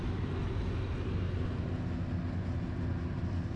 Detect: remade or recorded recorded